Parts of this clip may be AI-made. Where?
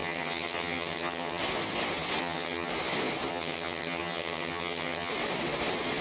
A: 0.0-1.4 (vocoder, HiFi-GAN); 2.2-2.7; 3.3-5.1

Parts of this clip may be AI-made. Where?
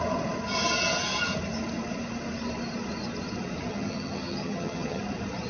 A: 3.7-5.0 (vocoder, HiFi-GAN)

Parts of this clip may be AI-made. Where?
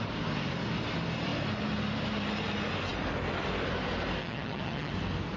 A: 4.2-4.9 (vocoder, HiFi-GAN)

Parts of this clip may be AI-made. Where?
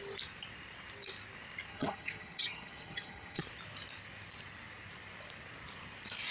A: 1.7-3.4 (vocoder, HiFi-GAN)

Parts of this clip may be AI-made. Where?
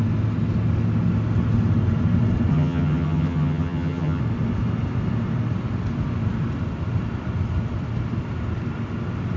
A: 2.5-4.2 (vocoder, HiFi-GAN)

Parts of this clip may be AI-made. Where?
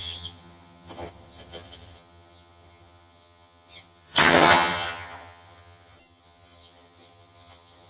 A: 0.0-7.9 (vocoder, HiFi-GAN)